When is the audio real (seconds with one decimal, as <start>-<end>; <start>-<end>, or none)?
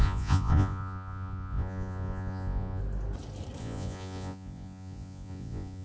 2.8-3.6